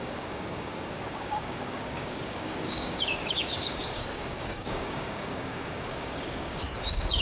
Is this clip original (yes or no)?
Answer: no